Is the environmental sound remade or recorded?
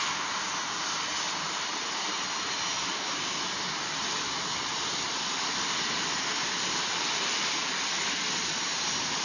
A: recorded